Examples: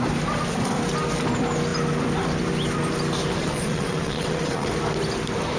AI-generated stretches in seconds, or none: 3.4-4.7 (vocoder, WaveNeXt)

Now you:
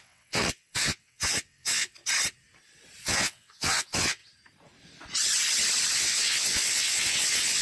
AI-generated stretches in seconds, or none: 0.0-2.0 (vocoder, WaveNeXt); 3.0-4.2; 6.0-7.6

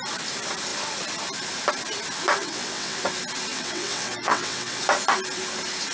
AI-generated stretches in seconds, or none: 2.4-3.0 (vocoder, WaveNeXt); 3.5-4.8

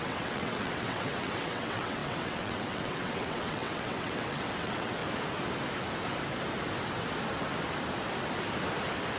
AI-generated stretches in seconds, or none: 0.0-5.0 (vocoder, WaveNeXt)

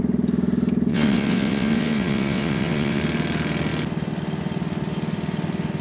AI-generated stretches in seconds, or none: 0.9-3.0 (vocoder, WaveNeXt)

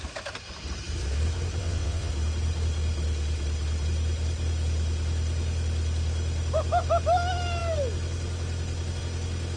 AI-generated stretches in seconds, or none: 1.6-2.1 (vocoder, WaveNeXt)

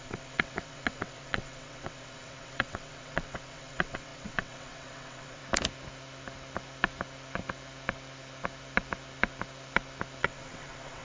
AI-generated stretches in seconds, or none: 0.0-5.4 (vocoder, WaveNeXt); 10.2-11.0